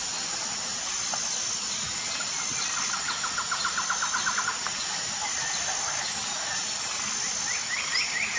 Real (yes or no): yes